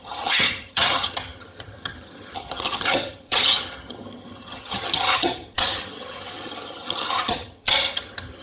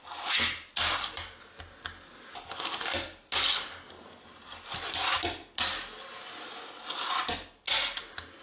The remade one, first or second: first